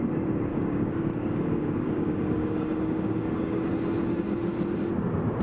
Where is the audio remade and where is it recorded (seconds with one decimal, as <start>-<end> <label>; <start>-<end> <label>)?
0.0-0.5 recorded; 0.5-3.7 remade; 3.7-5.4 recorded